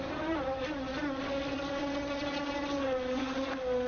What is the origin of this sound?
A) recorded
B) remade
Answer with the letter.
A